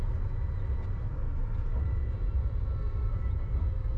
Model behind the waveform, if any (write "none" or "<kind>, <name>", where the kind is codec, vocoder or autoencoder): none